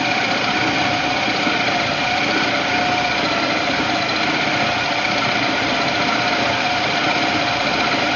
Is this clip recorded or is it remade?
recorded